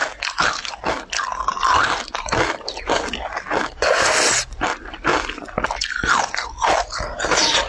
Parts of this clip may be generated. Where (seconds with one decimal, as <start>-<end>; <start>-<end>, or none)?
none